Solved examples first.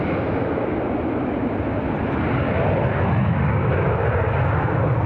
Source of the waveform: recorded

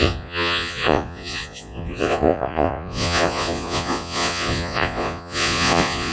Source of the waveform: remade